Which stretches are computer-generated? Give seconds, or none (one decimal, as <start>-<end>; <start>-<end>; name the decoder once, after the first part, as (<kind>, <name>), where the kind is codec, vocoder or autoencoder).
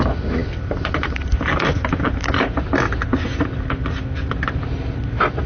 none